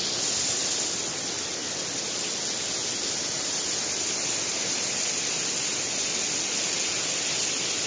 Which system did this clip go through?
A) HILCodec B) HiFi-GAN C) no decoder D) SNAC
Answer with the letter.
C